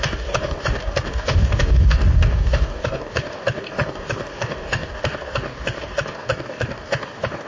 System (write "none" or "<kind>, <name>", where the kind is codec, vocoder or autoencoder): codec, DAC